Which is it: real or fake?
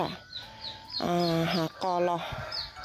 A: real